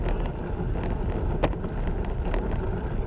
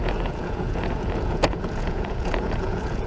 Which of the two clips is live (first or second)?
first